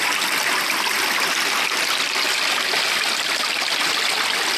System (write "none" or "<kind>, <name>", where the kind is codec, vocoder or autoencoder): none